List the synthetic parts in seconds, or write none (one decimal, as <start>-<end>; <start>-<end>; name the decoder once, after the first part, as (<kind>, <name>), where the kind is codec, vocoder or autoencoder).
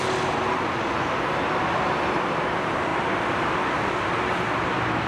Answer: none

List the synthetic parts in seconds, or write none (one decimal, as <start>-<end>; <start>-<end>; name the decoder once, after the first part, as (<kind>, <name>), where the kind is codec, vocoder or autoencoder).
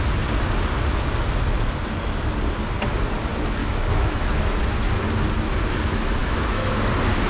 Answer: 3.6-4.6 (autoencoder, DAC-VAE); 6.2-6.8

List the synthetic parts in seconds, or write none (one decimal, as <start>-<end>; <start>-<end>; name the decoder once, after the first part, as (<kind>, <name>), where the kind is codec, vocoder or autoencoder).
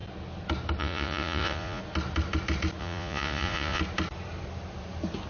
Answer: 0.8-1.8 (vocoder, Vocos); 2.8-3.8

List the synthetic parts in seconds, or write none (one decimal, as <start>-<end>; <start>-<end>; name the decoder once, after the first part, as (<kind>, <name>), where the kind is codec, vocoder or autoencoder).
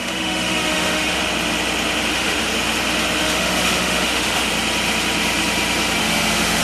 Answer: 0.0-1.2 (autoencoder, DAC-VAE); 2.1-2.5; 3.2-4.5; 6.0-6.6